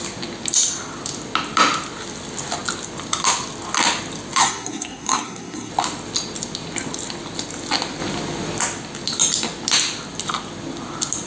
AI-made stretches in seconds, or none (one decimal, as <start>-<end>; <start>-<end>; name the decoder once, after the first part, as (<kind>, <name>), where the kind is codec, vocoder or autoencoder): 4.4-5.7 (codec, SNAC)